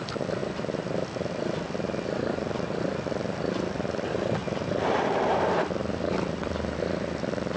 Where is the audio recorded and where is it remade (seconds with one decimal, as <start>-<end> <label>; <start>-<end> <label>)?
0.0-0.4 remade; 0.4-1.3 recorded; 1.3-4.4 remade; 4.4-5.4 recorded; 5.4-7.6 remade